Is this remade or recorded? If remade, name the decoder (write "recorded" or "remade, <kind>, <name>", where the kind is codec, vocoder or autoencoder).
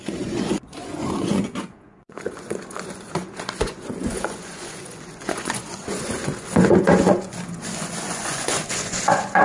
remade, vocoder, Vocos